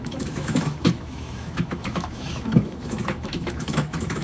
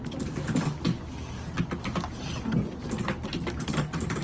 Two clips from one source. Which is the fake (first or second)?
first